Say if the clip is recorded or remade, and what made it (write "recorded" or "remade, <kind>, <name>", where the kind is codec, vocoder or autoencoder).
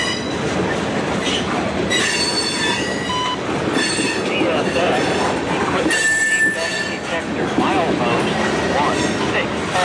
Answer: recorded